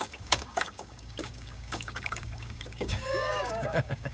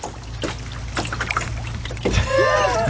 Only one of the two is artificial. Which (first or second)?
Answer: first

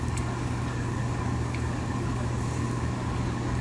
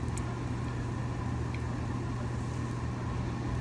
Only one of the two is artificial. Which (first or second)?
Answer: first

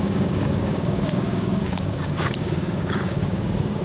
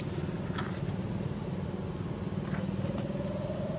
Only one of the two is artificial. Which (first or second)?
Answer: first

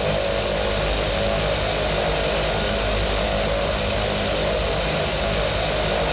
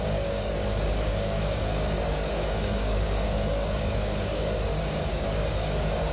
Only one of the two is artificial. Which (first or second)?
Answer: second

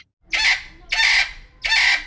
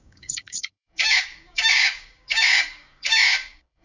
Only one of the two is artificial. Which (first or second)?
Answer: second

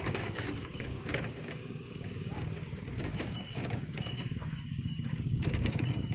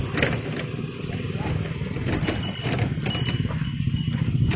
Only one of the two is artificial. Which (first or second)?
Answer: first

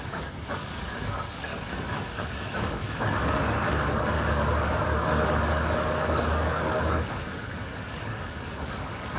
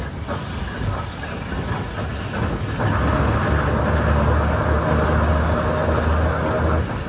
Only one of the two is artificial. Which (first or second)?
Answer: first